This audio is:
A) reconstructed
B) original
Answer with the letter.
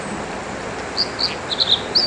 B